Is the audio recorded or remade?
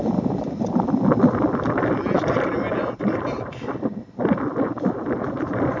recorded